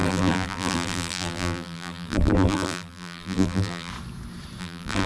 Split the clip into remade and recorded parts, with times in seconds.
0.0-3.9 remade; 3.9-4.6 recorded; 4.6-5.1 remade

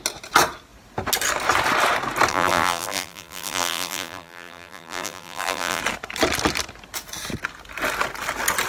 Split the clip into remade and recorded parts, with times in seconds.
0.0-2.3 recorded; 2.3-5.8 remade; 5.8-8.7 recorded

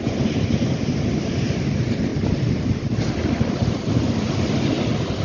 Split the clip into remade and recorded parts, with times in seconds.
0.0-5.2 recorded

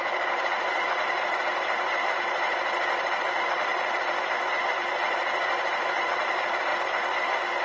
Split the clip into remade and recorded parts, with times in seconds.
0.0-3.7 remade; 3.7-4.5 recorded; 4.5-6.7 remade; 6.7-7.6 recorded

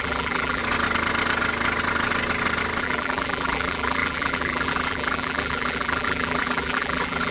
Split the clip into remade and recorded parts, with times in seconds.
0.0-0.6 remade; 0.6-2.8 recorded; 2.8-7.3 remade

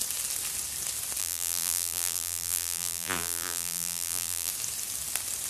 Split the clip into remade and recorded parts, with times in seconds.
0.0-1.2 recorded; 1.2-4.5 remade; 4.5-5.5 recorded